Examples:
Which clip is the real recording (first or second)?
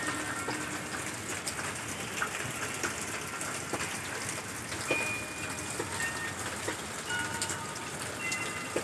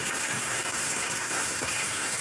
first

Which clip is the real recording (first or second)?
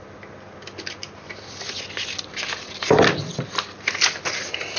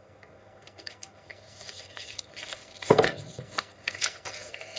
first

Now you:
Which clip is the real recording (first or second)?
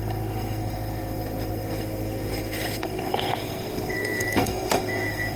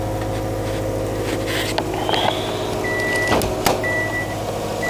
second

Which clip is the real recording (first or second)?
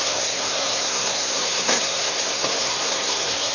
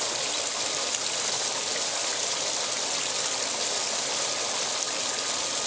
second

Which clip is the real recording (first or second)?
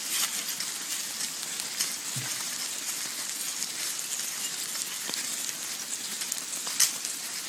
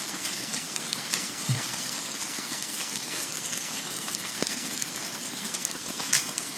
first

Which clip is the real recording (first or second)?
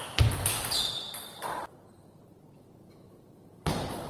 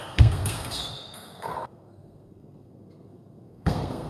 first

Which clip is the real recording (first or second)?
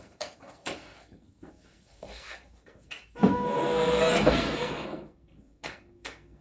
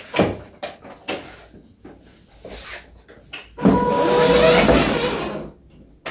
second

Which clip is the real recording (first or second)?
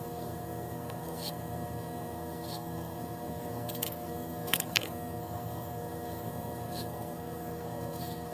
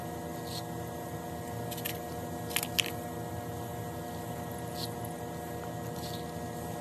second